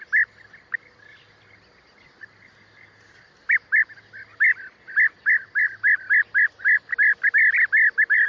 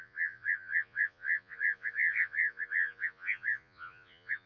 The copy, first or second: second